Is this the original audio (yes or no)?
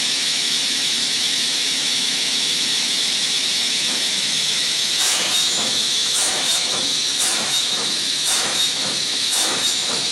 no